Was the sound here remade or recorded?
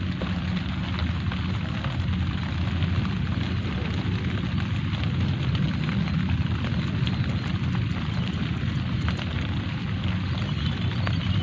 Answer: recorded